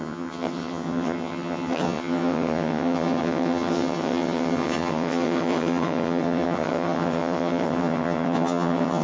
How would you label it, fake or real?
fake